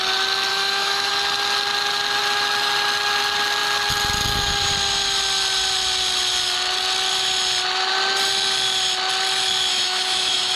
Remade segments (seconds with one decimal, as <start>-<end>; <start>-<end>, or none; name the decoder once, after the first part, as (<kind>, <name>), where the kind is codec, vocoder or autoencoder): 0.5-1.1 (autoencoder, DAC-VAE); 9.7-10.6